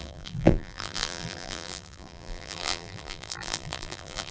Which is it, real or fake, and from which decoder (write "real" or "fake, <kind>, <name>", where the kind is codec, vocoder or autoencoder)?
fake, vocoder, BigVGAN v2